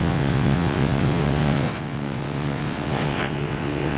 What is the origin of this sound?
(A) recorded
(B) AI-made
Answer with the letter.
B